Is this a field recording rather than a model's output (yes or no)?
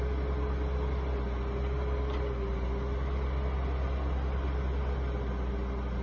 yes